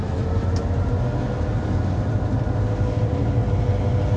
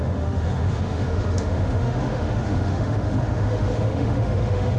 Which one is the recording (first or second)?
first